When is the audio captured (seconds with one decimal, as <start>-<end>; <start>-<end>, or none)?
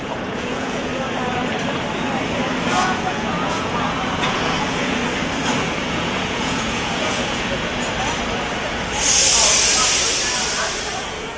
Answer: 0.9-2.7; 5.0-5.9; 7.7-11.0